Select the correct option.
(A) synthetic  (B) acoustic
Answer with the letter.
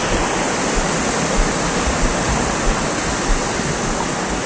B